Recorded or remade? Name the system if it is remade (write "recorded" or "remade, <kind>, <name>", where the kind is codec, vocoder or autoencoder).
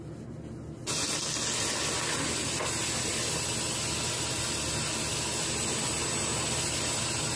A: recorded